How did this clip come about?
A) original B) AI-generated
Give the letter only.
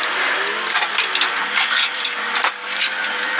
A